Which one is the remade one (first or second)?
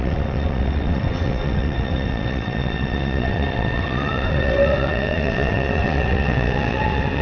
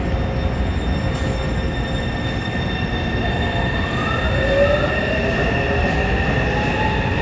first